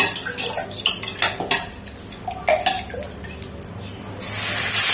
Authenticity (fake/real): real